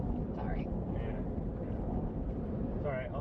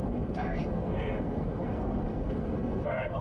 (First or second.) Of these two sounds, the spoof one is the second